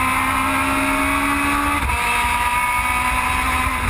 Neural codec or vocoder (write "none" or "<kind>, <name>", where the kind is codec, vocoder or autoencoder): none